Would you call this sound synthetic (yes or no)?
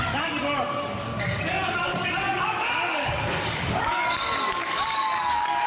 yes